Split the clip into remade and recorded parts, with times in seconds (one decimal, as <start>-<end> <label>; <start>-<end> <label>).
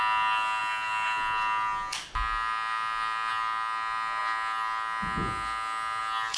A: 0.0-6.4 recorded